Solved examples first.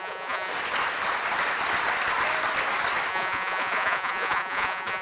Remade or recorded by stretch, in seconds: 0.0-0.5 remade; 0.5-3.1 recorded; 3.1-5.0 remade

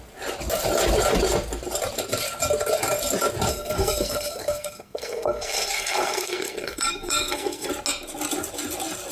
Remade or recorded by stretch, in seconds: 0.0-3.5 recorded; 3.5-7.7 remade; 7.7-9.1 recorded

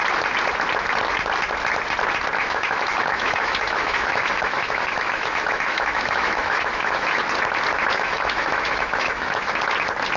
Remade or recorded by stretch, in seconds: 0.0-2.4 recorded; 2.4-7.2 remade; 7.2-7.9 recorded; 7.9-9.5 remade; 9.5-10.2 recorded